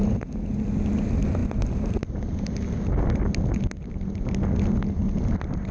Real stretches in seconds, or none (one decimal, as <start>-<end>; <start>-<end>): 0.0-5.7

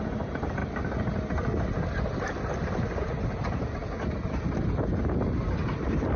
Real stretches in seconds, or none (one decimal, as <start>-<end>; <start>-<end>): 0.6-3.0; 3.8-5.0